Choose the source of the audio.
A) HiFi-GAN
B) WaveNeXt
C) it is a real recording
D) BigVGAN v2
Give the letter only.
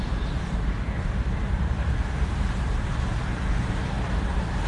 D